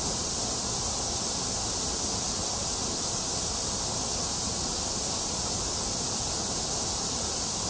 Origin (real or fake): real